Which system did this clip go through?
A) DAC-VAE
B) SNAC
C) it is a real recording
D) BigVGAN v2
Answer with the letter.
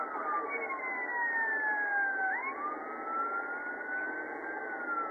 C